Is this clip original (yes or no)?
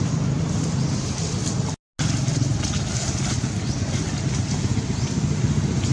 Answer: yes